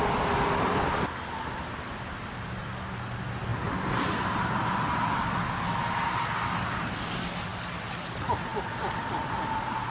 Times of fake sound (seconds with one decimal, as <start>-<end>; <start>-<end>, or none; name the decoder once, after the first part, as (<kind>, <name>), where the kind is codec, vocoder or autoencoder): none